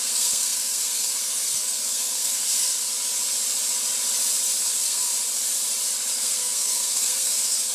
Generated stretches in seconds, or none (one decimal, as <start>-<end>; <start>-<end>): 0.0-2.9; 4.6-5.1; 6.1-7.7